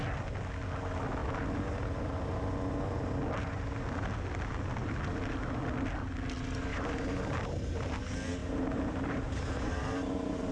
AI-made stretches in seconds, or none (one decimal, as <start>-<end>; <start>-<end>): 6.7-7.9; 8.4-10.5